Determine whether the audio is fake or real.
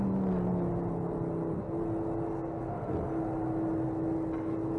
real